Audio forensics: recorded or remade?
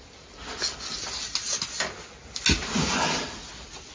recorded